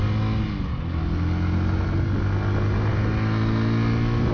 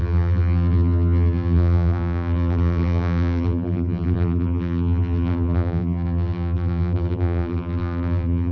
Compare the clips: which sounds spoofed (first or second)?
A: second